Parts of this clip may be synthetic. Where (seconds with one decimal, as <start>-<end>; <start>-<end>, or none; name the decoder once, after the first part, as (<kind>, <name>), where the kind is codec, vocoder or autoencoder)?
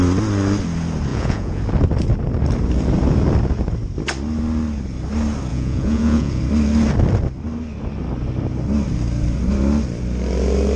1.1-1.6 (vocoder, Vocos); 5.5-6.4